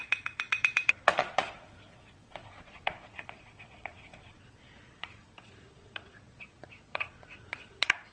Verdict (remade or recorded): remade